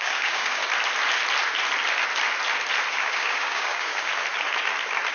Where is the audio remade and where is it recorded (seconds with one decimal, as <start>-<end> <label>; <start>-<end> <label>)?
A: 0.0-0.6 remade; 0.6-2.9 recorded; 2.9-4.1 remade; 4.1-5.1 recorded